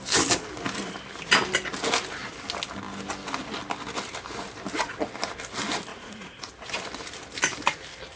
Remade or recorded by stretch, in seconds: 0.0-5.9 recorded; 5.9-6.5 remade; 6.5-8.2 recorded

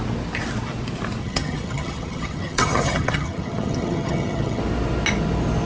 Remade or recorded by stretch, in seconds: 0.0-1.2 recorded; 1.2-4.6 remade; 4.6-5.7 recorded

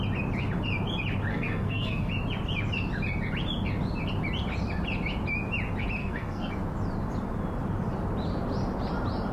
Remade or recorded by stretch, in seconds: 0.0-1.3 recorded; 1.3-2.1 remade; 2.1-6.0 recorded; 6.0-6.5 remade; 6.5-9.3 recorded

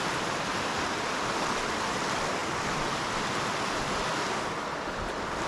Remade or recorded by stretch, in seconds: 0.0-5.5 recorded

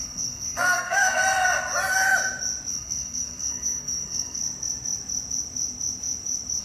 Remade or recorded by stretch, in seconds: 0.0-1.2 remade; 1.2-2.7 recorded; 2.7-4.4 remade; 4.4-6.6 recorded

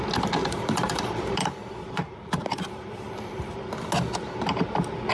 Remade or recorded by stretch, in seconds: 0.0-0.4 recorded; 0.4-3.5 remade; 3.5-5.1 recorded

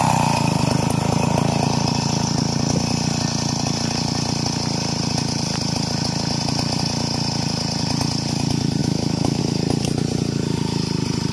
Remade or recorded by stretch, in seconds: 0.0-8.8 recorded; 8.8-9.4 remade; 9.4-11.3 recorded